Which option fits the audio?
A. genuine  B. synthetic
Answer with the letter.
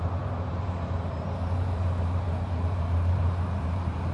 B